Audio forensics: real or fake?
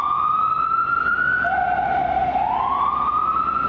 real